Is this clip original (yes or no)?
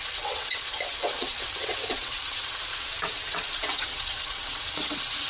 no